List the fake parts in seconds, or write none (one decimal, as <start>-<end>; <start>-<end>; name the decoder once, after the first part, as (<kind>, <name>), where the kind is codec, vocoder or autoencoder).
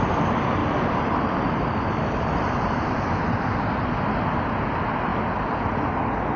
0.6-4.4 (vocoder, BigVGAN v2)